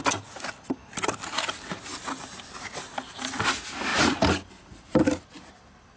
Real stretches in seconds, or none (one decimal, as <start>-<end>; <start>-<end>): 0.0-6.0